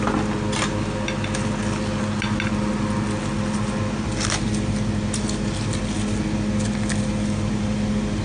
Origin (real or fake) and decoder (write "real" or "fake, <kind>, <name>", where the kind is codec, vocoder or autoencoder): real